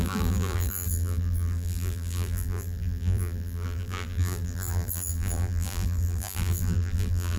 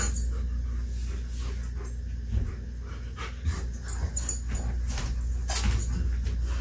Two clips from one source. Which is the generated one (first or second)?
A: first